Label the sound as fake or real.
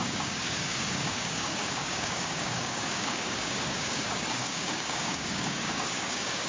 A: fake